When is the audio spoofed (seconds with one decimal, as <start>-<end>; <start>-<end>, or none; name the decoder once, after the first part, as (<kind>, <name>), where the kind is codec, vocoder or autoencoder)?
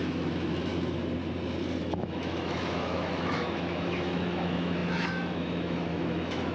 0.0-0.7 (autoencoder, DAC-VAE); 1.8-6.5